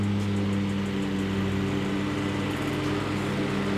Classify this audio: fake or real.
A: real